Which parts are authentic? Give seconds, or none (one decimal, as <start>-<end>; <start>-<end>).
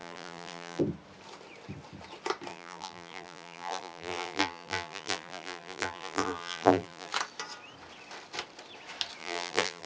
0.8-2.5; 7.1-9.2